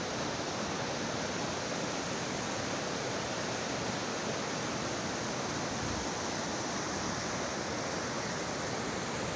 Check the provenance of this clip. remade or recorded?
recorded